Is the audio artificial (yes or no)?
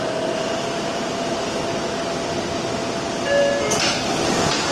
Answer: no